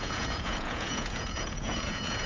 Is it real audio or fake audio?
fake